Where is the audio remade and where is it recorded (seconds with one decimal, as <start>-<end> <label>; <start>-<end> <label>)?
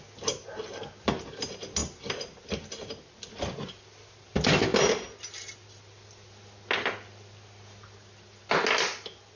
0.0-9.4 recorded